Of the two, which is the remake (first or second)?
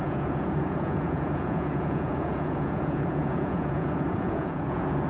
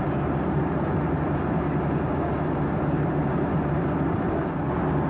first